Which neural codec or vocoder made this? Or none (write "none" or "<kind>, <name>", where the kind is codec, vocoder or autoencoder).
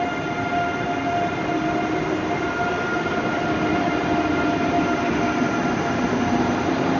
none